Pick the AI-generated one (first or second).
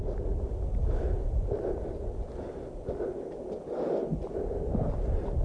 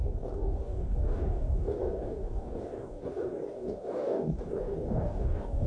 second